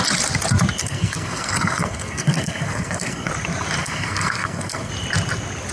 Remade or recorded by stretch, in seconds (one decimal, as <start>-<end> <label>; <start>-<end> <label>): 0.0-0.8 recorded; 0.8-3.3 remade; 3.3-3.8 recorded; 3.8-4.9 remade; 4.9-5.7 recorded